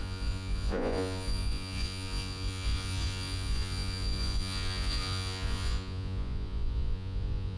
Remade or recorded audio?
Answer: remade